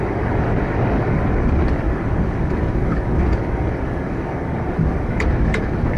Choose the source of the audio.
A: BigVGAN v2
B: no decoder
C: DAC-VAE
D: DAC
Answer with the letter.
D